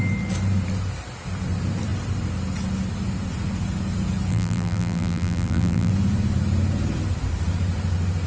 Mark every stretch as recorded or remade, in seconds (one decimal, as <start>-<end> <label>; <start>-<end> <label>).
0.0-4.3 recorded; 4.3-5.9 remade; 5.9-8.3 recorded